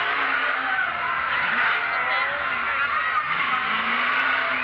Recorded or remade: recorded